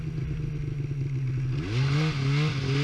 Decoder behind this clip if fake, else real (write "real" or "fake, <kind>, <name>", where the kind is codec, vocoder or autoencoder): real